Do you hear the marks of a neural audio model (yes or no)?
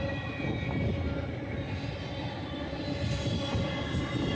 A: no